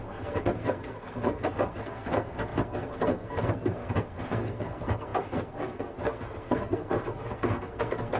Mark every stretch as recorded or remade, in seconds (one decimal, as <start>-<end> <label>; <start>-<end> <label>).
0.0-8.2 remade